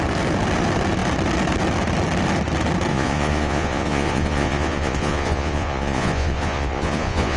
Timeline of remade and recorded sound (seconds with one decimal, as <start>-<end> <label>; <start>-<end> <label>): 0.0-2.9 recorded; 2.9-7.4 remade